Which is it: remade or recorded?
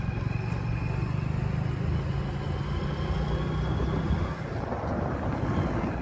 recorded